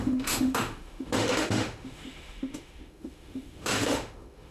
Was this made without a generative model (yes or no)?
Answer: no